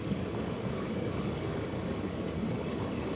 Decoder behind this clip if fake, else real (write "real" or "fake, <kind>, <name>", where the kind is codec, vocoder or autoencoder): fake, codec, DAC